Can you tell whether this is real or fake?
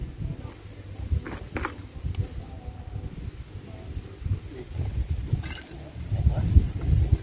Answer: real